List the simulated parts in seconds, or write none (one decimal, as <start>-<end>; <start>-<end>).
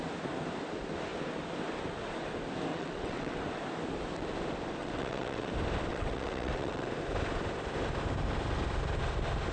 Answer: 2.7-3.4; 4.8-5.5; 5.9-6.9